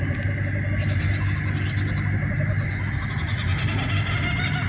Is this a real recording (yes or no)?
yes